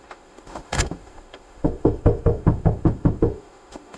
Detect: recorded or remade remade